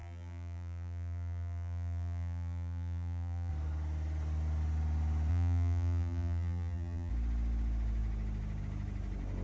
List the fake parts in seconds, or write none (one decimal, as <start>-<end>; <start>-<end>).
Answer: 0.0-3.5; 5.3-7.1